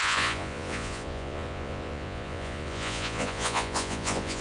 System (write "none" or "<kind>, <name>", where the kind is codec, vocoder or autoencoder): vocoder, Vocos